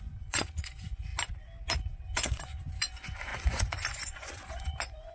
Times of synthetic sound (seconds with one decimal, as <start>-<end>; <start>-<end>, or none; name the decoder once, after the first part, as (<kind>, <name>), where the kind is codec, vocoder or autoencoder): 0.0-1.1 (vocoder, Vocos); 1.8-5.1